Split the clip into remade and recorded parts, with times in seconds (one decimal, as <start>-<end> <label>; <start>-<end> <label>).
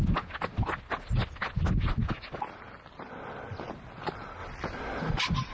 0.0-5.5 recorded